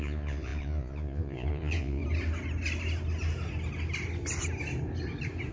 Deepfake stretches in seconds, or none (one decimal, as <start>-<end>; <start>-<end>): 0.0-2.0